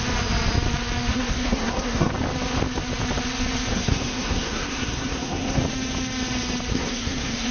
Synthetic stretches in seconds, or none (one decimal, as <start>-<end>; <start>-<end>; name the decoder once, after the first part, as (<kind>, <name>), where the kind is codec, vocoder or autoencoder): 1.1-2.1 (codec, SNAC); 3.7-5.6; 6.7-7.5